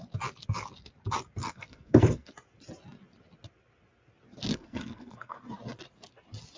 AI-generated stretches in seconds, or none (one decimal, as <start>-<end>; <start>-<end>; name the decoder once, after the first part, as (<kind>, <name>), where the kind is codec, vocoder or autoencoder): 1.4-2.3 (codec, SNAC); 4.5-5.4

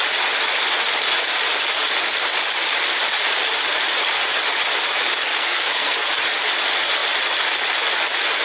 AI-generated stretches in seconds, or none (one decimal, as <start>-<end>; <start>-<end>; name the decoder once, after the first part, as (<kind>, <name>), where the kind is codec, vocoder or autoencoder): 5.3-6.1 (codec, SNAC)

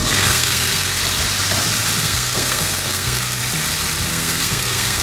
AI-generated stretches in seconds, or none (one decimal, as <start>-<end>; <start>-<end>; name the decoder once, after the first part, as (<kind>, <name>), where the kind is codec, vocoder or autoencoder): 0.0-1.0 (codec, SNAC); 2.0-3.4; 4.1-5.0

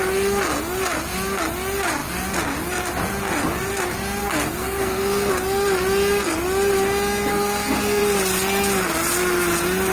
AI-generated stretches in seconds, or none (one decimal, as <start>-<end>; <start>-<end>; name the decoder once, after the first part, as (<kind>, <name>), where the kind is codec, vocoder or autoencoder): 4.2-5.3 (codec, SNAC); 7.3-8.0